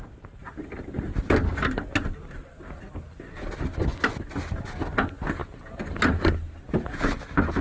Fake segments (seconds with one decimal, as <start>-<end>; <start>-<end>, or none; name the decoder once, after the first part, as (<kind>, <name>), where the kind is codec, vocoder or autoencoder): none